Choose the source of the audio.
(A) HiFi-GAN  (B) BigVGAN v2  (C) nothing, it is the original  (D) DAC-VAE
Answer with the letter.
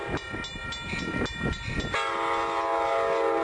C